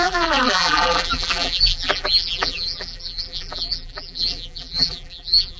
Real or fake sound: fake